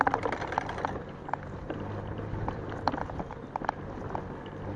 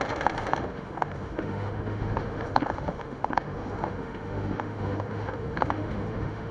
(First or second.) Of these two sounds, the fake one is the second